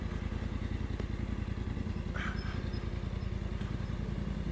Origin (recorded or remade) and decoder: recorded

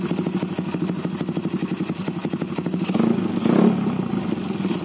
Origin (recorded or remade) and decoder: recorded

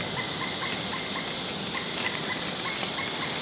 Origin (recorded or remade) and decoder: recorded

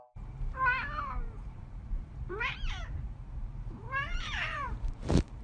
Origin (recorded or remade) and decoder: remade, vocoder, BigVGAN v2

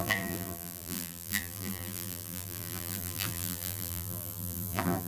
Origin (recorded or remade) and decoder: remade, vocoder, BigVGAN v2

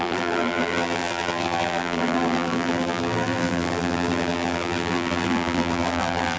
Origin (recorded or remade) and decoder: remade, vocoder, BigVGAN v2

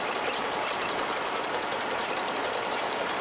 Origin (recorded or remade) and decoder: remade, vocoder, BigVGAN v2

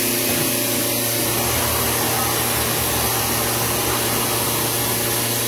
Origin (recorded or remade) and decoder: recorded